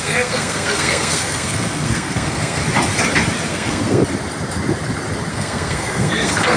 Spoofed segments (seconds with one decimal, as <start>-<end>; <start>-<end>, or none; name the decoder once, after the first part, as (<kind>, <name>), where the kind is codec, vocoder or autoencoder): 0.0-2.6 (codec, SNAC); 3.5-4.0; 5.3-6.6